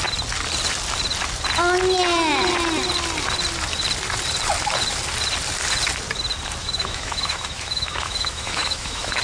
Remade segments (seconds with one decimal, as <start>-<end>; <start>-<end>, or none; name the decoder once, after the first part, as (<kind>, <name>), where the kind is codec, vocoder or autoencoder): 6.6-9.2 (autoencoder, DAC-VAE)